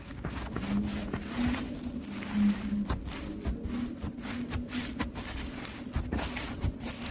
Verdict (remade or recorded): recorded